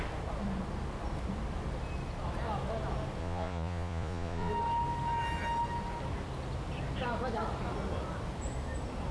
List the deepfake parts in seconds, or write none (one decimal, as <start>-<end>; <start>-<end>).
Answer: 3.2-4.5